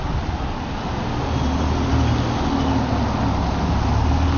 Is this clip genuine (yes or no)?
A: yes